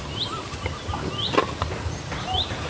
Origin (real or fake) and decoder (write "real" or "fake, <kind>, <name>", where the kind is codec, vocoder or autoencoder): real